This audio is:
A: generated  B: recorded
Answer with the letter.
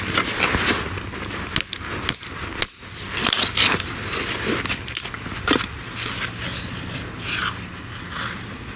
B